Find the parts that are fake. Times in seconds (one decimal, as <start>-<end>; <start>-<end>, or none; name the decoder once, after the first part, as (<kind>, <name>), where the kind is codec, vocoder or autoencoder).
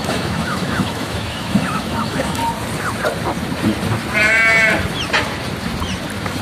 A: 0.0-2.4 (autoencoder, DAC-VAE)